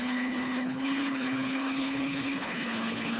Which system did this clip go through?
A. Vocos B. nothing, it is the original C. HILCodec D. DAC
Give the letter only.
C